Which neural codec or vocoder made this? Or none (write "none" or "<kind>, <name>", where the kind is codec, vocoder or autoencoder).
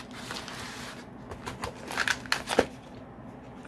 none